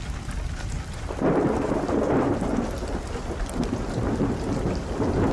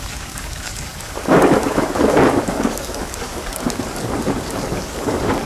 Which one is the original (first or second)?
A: first